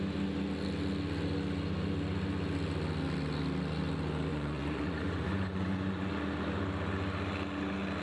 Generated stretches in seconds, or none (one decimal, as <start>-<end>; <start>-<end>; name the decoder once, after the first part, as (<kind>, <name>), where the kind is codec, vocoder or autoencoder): 4.3-6.1 (vocoder, Vocos)